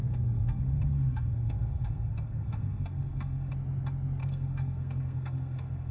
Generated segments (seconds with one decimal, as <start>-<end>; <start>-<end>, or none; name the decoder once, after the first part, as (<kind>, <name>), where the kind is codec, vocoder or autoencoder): 0.0-3.5 (codec, SNAC); 4.2-5.9